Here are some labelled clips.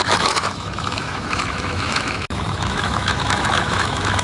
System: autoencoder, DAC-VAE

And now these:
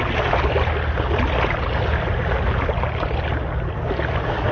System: none